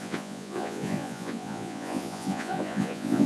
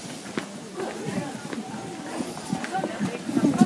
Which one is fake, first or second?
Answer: first